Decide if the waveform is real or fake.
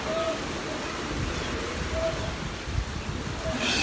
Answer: real